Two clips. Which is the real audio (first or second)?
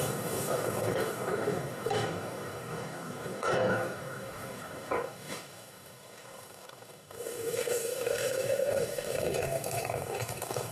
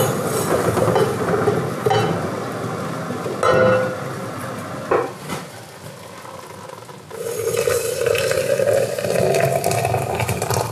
second